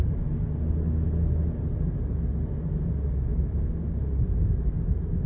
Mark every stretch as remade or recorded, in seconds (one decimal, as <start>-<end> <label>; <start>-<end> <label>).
0.0-5.3 recorded